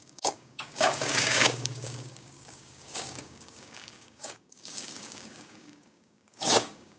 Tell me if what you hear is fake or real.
fake